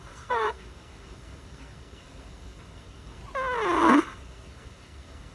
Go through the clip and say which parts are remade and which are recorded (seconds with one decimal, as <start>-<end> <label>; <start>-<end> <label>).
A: 0.0-3.2 remade; 3.2-3.8 recorded; 3.8-5.3 remade